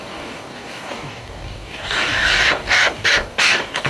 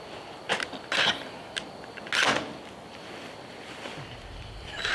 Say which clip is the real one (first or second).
second